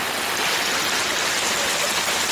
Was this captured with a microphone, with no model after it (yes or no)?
yes